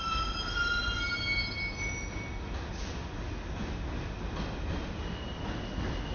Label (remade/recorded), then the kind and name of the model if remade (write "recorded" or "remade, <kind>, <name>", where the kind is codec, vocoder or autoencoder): recorded